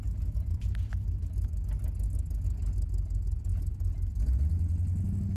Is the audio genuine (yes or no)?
yes